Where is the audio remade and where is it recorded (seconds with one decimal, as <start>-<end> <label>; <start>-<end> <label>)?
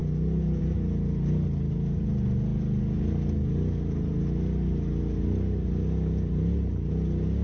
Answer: 0.0-7.4 recorded